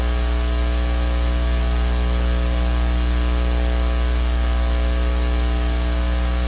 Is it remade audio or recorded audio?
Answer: recorded